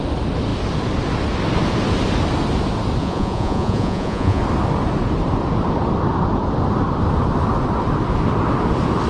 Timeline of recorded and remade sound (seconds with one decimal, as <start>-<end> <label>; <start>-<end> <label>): 0.0-3.0 recorded; 3.0-4.4 remade; 4.4-9.1 recorded